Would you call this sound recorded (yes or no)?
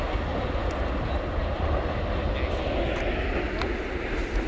yes